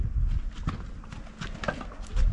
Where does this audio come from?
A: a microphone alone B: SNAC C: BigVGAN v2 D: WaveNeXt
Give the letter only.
A